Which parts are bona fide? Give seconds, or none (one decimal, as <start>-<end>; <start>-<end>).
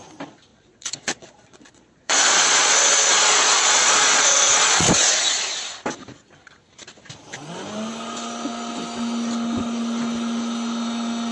0.0-0.5; 4.9-11.3